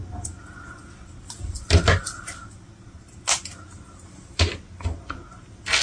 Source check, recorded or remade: recorded